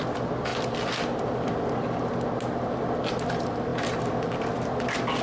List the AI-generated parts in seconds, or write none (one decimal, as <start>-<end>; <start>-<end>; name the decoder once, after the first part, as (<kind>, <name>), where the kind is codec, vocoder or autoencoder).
0.5-1.7 (vocoder, BigVGAN v2); 3.7-5.2